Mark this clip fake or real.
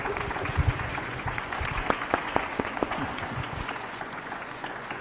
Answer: fake